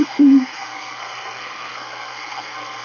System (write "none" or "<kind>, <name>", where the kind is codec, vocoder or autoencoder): codec, SNAC